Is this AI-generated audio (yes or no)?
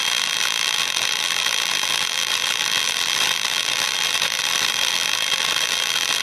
yes